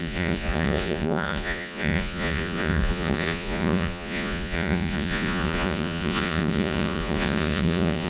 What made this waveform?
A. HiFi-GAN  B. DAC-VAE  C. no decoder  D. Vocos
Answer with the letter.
D